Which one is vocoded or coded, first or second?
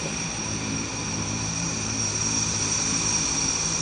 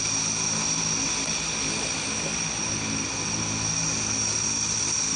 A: first